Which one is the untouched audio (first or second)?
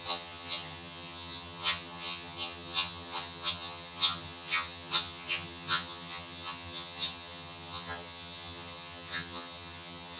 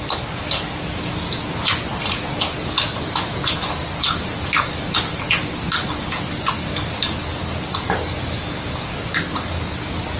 second